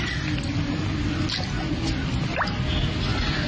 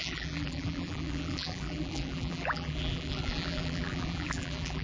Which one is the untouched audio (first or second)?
first